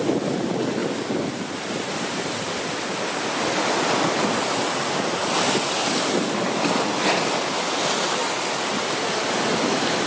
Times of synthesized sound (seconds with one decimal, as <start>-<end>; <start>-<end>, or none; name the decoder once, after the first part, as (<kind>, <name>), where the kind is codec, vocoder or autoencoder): none